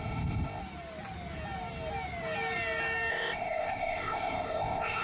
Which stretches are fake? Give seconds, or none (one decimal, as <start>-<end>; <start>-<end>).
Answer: 0.0-0.6; 3.1-5.0